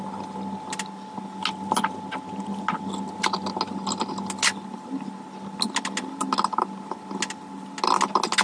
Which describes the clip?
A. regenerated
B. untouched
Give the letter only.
B